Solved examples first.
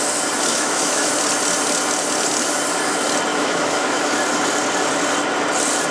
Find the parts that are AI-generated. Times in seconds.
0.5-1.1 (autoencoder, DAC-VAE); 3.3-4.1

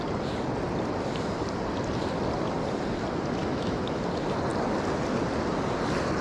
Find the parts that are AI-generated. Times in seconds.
3.4-4.0 (autoencoder, DAC-VAE)

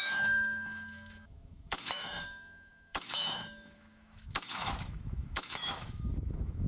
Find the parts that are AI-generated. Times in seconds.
0.0-6.7 (autoencoder, DAC-VAE)

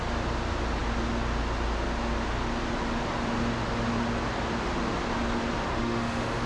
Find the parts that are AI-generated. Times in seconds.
5.8-6.5 (autoencoder, DAC-VAE)

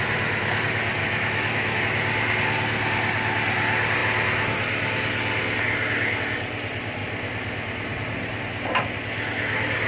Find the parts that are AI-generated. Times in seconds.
1.0-1.8 (autoencoder, DAC-VAE)

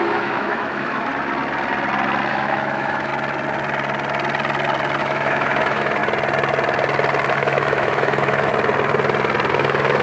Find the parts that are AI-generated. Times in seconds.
0.0-1.1 (autoencoder, DAC-VAE); 2.3-3.1; 5.0-6.0; 7.3-8.5; 9.5-10.0